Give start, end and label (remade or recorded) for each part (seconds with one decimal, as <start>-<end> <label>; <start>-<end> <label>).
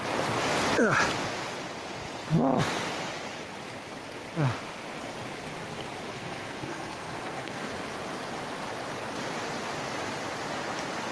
0.0-6.1 recorded; 6.1-7.7 remade; 7.7-11.1 recorded